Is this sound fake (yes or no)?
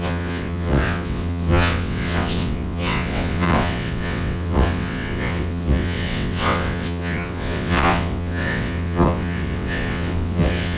yes